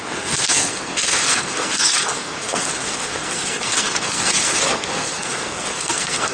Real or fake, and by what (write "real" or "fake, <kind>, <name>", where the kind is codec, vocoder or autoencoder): fake, codec, SNAC